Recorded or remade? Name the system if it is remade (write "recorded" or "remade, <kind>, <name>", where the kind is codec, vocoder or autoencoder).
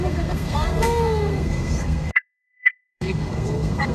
remade, codec, SNAC